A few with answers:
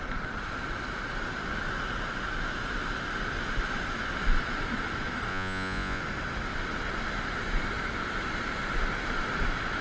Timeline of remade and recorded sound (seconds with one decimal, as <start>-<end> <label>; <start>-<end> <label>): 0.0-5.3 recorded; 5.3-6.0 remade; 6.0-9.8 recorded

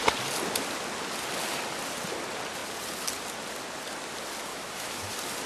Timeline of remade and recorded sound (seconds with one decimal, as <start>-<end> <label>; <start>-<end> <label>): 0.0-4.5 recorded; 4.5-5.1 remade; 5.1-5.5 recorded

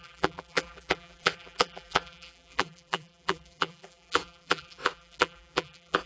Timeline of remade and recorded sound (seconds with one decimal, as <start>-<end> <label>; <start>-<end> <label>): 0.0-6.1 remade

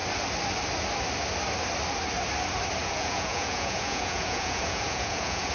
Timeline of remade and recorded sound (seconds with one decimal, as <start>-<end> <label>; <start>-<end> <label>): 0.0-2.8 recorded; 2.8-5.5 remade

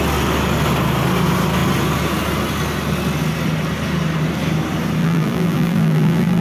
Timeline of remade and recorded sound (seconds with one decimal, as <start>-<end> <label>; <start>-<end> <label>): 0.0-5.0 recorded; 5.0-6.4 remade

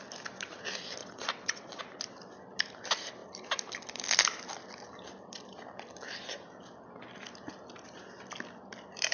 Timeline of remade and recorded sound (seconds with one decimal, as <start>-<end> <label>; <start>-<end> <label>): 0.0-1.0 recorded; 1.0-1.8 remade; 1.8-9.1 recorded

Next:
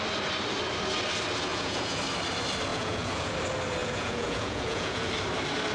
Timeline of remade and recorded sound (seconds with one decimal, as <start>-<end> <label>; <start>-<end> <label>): 0.0-1.5 recorded; 1.5-2.0 remade; 2.0-2.7 recorded; 2.7-3.3 remade; 3.3-3.8 recorded; 3.8-5.1 remade; 5.1-5.7 recorded